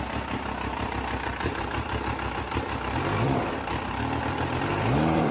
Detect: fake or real fake